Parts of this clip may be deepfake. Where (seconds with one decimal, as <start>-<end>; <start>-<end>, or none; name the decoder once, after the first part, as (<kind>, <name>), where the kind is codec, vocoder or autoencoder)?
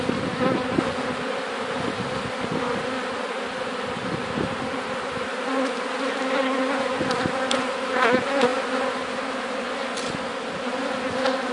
none